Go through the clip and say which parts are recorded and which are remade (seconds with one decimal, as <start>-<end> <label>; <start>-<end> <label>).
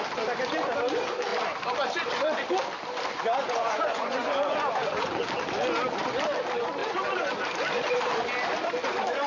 0.0-3.4 recorded; 3.4-5.2 remade; 5.2-6.8 recorded; 6.8-7.3 remade; 7.3-9.3 recorded